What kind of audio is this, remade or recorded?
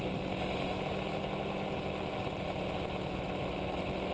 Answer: recorded